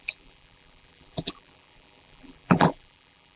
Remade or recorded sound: remade